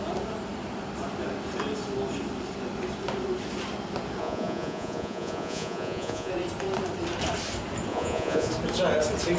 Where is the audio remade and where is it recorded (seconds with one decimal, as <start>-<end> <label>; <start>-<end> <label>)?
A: 0.0-4.2 recorded; 4.2-6.3 remade; 6.3-7.9 recorded; 7.9-8.5 remade; 8.5-9.4 recorded